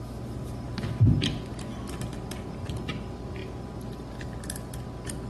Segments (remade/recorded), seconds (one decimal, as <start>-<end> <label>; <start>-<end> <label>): 0.0-5.3 recorded